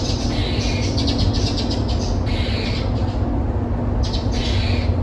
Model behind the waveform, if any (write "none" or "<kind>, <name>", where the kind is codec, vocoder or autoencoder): none